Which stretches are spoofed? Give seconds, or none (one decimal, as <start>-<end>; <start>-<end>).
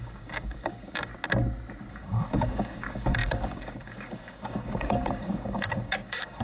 0.0-1.1; 1.9-6.4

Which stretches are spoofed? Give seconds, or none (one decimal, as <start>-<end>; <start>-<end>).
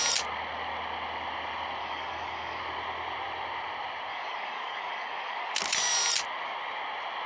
1.8-2.6; 4.1-5.6